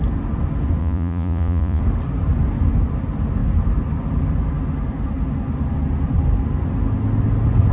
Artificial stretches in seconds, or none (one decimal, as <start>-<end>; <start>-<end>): 0.8-1.8